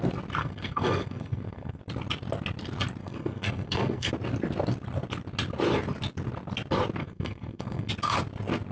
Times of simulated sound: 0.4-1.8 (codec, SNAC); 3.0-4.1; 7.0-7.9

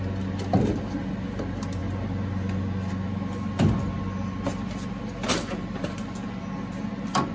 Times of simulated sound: none

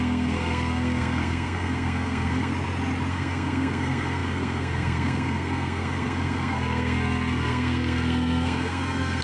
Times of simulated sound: 0.0-2.5 (codec, SNAC); 3.1-9.2

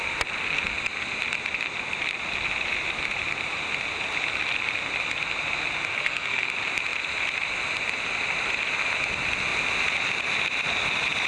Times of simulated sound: 5.9-6.5 (codec, SNAC)